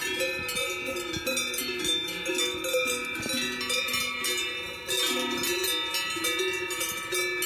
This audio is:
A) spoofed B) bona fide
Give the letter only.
B